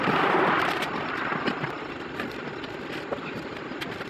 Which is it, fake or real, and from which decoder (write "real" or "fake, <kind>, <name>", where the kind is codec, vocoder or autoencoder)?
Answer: real